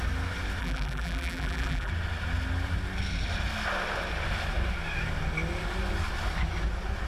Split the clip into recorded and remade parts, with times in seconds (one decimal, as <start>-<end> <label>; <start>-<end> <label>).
0.0-0.6 recorded; 0.6-1.9 remade; 1.9-7.1 recorded